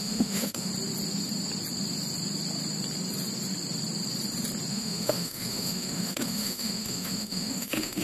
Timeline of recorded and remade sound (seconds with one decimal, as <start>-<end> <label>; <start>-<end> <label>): 0.0-0.7 remade; 0.7-4.7 recorded; 4.7-8.0 remade